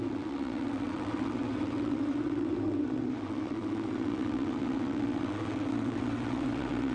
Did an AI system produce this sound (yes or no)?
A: yes